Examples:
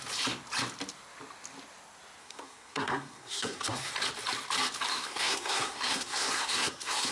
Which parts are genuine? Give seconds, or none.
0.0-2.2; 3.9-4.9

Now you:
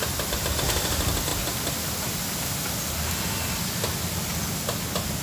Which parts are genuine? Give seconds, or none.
0.0-5.2